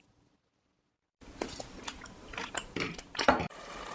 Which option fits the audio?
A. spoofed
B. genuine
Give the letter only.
B